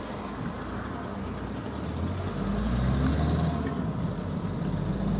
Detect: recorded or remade recorded